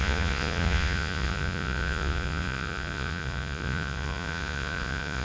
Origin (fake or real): fake